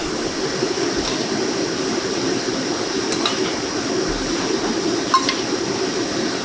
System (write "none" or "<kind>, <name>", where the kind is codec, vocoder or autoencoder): none